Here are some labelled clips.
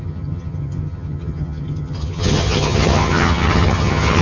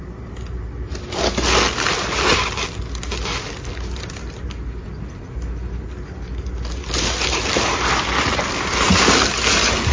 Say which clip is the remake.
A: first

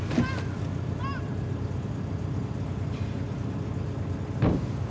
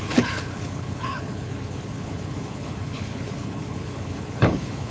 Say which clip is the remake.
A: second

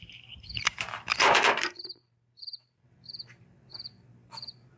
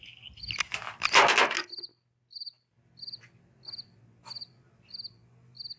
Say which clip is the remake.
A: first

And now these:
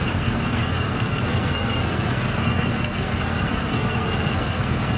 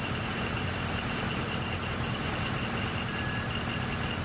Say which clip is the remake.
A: first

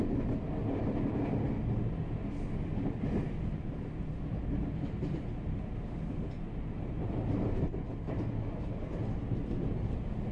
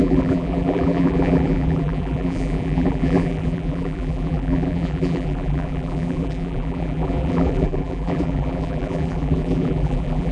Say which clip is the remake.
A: second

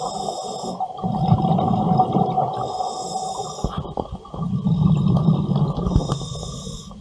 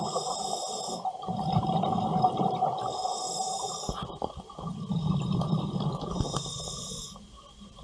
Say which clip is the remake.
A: second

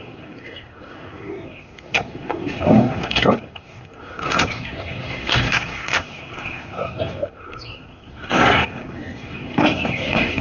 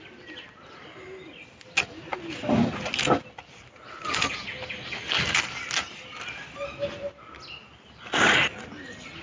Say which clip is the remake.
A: first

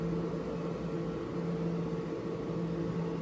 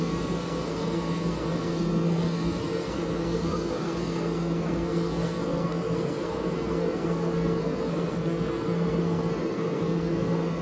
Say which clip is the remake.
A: second